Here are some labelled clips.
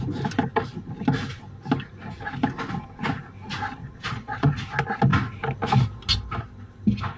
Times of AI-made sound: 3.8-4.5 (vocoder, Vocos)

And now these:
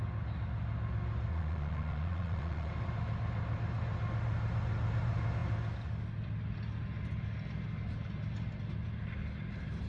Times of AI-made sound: 1.3-2.7 (vocoder, Vocos)

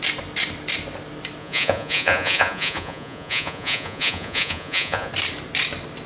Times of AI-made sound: 1.4-5.1 (vocoder, Vocos)

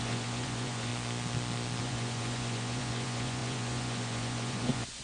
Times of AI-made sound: 0.0-0.9 (vocoder, Vocos); 1.8-5.0

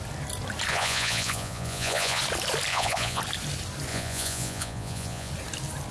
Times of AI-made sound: 0.7-2.2 (vocoder, Vocos); 2.7-3.2; 3.9-5.3

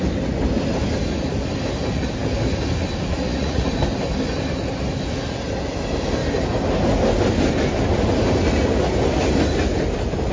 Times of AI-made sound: 3.1-3.7 (vocoder, Vocos)

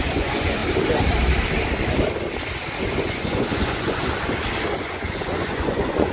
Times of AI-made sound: 0.0-0.6 (vocoder, Vocos); 3.0-4.0; 4.8-6.1